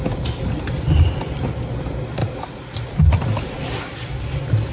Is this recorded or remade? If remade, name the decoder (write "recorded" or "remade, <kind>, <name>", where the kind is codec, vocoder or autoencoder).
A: recorded